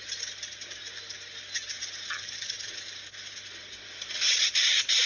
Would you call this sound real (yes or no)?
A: yes